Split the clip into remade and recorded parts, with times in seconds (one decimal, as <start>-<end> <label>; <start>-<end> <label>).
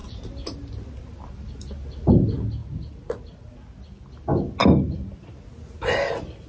0.0-6.5 recorded